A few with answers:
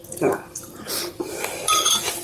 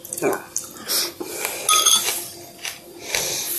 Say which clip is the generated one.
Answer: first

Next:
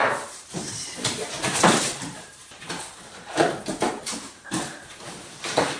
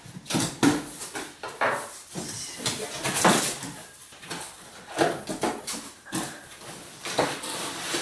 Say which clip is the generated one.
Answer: first